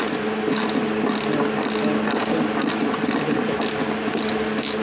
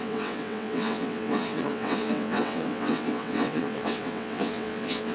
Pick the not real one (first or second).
second